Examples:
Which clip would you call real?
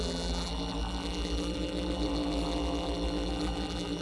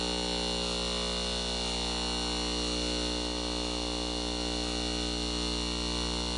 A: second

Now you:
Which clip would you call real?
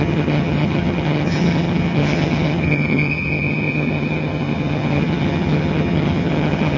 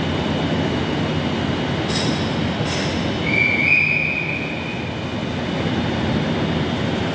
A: second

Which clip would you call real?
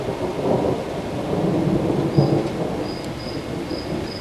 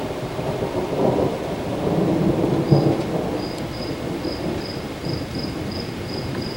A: first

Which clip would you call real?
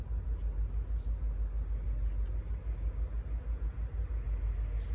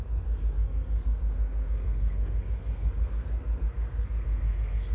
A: first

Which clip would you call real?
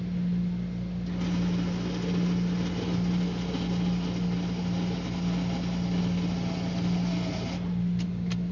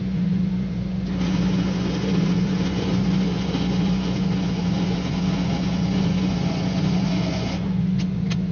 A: first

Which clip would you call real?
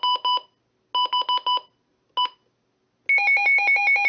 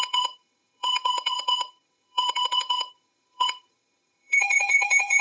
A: first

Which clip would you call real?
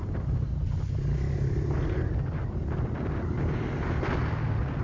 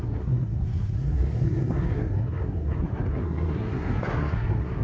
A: first